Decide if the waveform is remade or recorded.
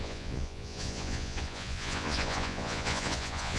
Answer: remade